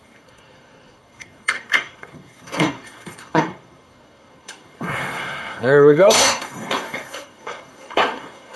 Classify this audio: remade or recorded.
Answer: remade